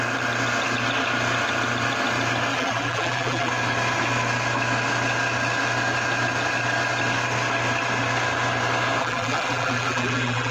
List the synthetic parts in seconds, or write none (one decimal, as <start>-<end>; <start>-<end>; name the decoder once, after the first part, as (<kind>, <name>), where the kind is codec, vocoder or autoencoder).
2.5-3.5 (vocoder, BigVGAN v2); 9.0-10.5